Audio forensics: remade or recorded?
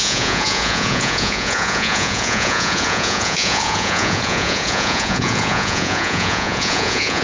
remade